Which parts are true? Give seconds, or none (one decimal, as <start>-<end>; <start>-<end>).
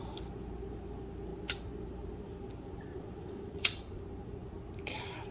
0.0-2.9; 4.0-5.3